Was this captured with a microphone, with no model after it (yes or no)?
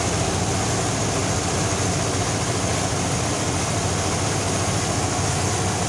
yes